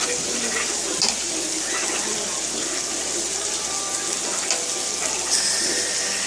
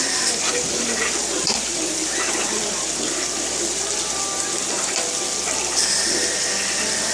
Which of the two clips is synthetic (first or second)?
second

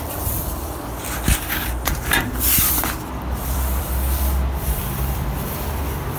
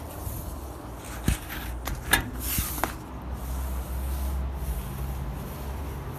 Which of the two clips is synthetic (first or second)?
first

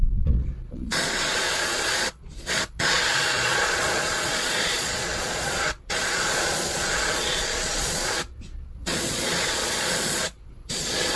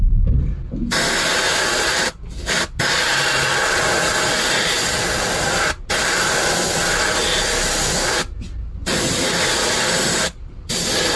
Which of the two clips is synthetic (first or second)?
first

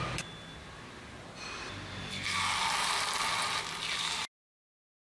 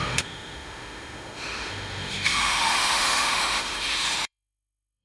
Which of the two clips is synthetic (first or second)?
second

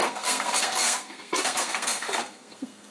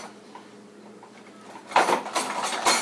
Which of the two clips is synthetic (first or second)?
first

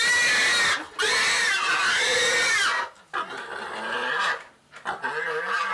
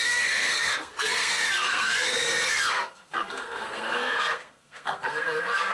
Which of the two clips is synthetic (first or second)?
second